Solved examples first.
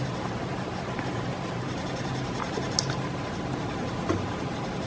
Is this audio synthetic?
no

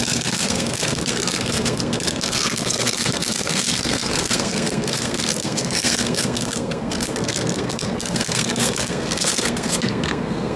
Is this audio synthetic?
yes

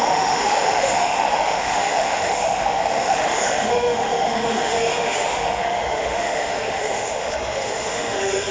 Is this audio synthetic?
yes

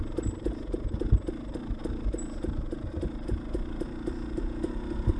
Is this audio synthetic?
no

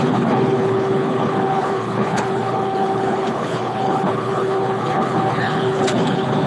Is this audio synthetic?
yes